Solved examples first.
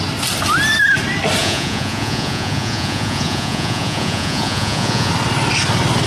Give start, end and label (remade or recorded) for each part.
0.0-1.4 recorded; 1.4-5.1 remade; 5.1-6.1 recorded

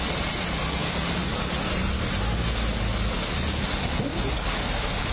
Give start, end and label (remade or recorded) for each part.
0.0-5.1 recorded

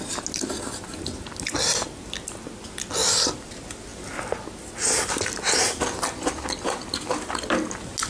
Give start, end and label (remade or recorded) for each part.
0.0-3.0 recorded; 3.0-3.5 remade; 3.5-8.1 recorded

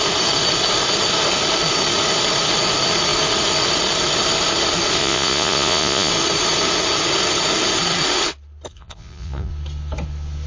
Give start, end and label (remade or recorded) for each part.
0.0-5.0 recorded; 5.0-6.1 remade; 6.1-8.7 recorded; 8.7-9.5 remade; 9.5-10.5 recorded

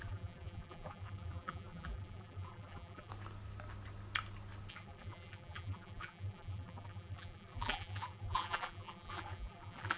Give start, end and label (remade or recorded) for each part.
0.0-3.1 remade; 3.1-4.7 recorded; 4.7-10.0 remade

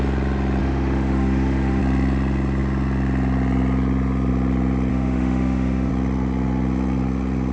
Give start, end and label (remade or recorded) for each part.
0.0-0.6 recorded; 0.6-1.8 remade; 1.8-4.9 recorded; 4.9-5.9 remade; 5.9-7.5 recorded

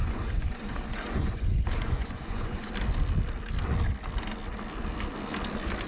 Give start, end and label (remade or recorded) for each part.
0.0-2.7 remade; 2.7-5.9 recorded

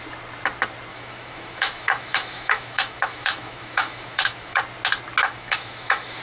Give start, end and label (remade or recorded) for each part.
0.0-0.9 recorded; 0.9-4.6 remade; 4.6-5.2 recorded; 5.2-6.2 remade